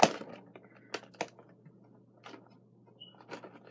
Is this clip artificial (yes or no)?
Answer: no